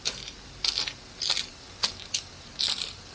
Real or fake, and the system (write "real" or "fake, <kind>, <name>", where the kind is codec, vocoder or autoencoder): real